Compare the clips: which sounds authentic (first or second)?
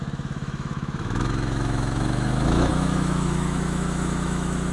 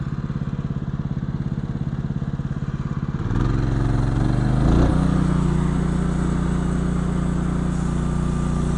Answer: second